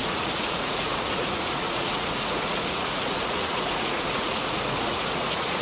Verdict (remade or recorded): remade